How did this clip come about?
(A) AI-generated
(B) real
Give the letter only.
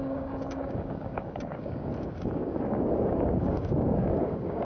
A